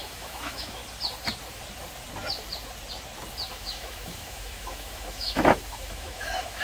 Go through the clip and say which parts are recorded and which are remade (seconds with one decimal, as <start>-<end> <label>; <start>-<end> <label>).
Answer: 0.0-0.8 remade; 0.8-3.5 recorded; 3.5-6.6 remade